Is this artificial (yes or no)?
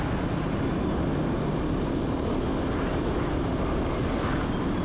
no